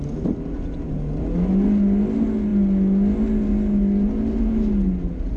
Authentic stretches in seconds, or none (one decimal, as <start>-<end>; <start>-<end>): 0.0-5.4